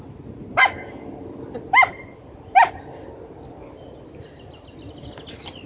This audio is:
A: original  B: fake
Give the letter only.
A